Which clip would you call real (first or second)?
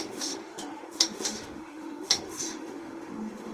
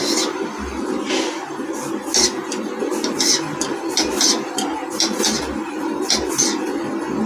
second